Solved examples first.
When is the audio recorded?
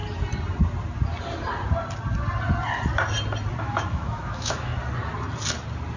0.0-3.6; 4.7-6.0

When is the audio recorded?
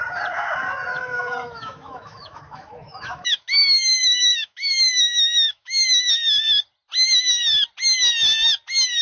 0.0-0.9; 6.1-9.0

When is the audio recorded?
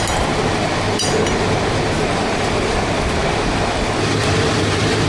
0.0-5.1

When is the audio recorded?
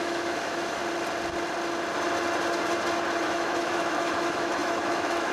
0.8-3.2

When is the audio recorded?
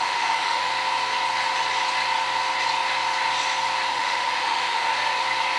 0.7-3.9; 4.9-5.6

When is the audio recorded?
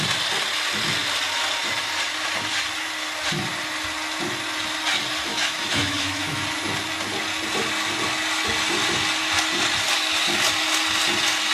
0.0-5.3; 6.4-11.5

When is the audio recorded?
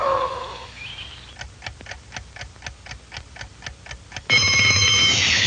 0.9-4.2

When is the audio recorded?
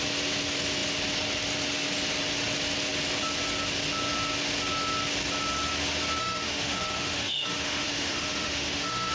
0.0-6.2